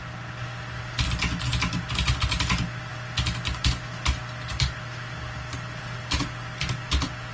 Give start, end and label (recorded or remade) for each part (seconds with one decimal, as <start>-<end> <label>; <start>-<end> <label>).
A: 0.0-7.3 recorded